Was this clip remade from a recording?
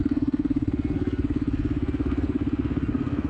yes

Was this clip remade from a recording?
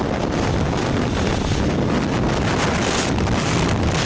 no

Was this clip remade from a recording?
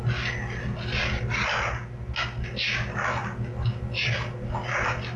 no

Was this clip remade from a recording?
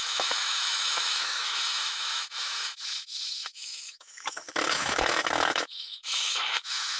yes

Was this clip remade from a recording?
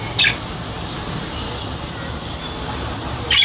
no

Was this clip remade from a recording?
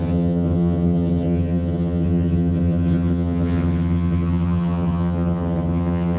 yes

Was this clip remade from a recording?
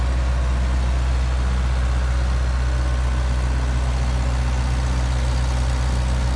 no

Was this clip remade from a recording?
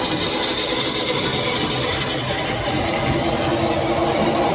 no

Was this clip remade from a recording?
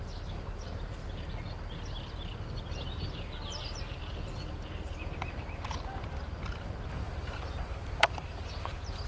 no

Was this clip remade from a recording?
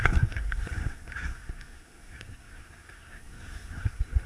yes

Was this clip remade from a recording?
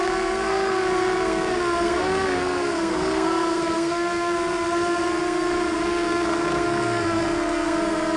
yes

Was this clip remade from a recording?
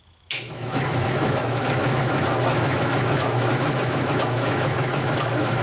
yes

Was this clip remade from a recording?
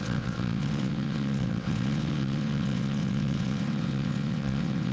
yes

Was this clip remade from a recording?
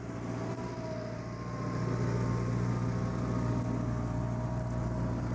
no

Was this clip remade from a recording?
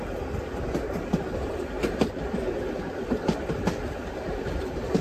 no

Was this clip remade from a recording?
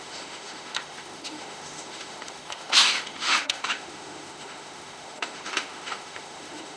yes